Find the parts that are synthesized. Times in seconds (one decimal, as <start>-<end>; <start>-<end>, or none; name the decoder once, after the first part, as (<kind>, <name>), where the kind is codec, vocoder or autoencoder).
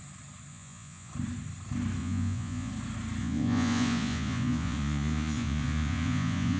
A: 0.5-1.1 (vocoder, Vocos); 2.0-2.7; 3.2-6.6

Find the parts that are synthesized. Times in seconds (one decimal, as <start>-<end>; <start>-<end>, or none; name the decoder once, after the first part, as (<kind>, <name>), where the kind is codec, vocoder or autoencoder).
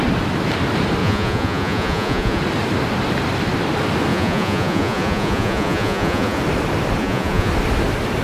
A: 1.0-2.4 (vocoder, Vocos); 4.1-6.4; 7.0-7.5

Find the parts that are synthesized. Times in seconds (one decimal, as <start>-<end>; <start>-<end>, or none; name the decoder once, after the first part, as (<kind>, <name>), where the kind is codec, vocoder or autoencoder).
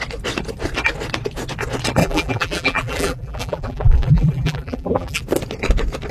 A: 2.0-5.2 (vocoder, BigVGAN v2)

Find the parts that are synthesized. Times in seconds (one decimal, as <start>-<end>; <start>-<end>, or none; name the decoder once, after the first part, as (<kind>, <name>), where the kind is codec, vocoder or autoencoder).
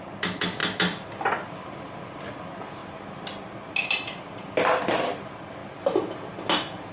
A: none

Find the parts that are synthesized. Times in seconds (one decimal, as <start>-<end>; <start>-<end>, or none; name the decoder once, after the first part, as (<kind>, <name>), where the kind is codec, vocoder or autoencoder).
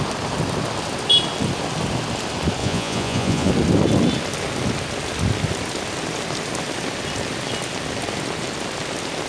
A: 2.6-3.5 (vocoder, Vocos)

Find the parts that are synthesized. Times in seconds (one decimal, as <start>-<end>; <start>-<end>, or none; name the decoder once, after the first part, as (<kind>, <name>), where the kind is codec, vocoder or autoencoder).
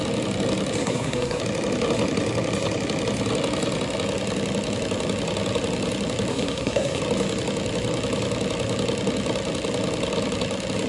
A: 0.8-1.4 (codec, SNAC); 6.3-7.0